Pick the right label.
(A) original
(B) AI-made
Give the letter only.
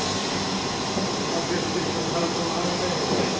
A